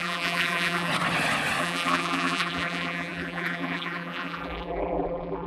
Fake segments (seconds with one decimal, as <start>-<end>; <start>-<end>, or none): 0.0-0.9; 1.6-5.5